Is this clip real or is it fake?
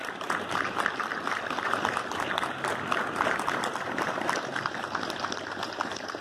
real